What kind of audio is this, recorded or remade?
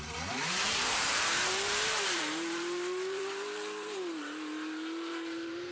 remade